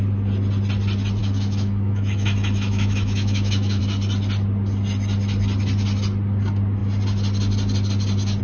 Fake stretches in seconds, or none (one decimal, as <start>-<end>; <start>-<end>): 1.2-3.8